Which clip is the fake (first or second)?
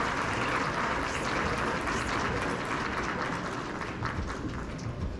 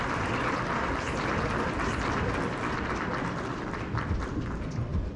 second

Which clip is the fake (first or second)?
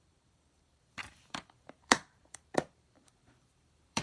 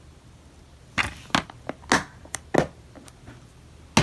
first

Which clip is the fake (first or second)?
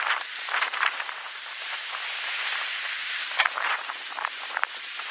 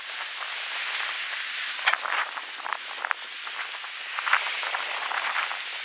first